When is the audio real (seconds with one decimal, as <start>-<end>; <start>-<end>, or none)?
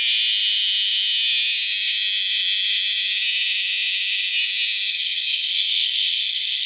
0.0-4.9